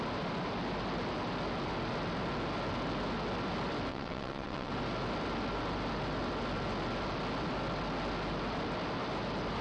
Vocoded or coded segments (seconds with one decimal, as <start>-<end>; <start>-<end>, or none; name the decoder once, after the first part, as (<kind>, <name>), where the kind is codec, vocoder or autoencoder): 3.9-4.7 (vocoder, WaveNeXt)

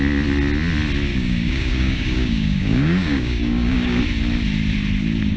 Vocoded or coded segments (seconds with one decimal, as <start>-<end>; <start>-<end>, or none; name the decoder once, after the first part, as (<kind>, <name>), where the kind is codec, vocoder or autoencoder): 1.1-4.0 (codec, DAC)

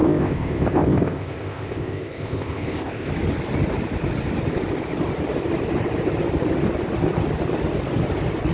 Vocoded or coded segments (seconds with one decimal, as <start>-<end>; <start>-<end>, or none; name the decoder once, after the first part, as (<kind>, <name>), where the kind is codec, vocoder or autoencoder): 0.0-3.1 (codec, ZipCodec)

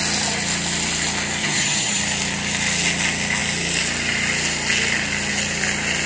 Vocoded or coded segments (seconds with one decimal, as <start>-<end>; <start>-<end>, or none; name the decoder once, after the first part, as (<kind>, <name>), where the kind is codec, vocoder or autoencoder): 1.4-2.0 (vocoder, HiFi-GAN)

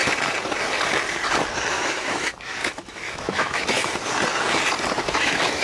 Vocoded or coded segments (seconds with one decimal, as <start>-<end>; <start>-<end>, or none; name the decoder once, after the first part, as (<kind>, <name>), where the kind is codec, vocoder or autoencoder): 1.7-3.8 (autoencoder, DAC-VAE); 5.0-5.6

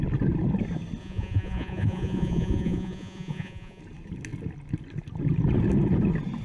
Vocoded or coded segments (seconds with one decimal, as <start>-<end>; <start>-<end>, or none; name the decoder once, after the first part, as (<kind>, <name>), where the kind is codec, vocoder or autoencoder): 1.0-3.8 (vocoder, Vocos)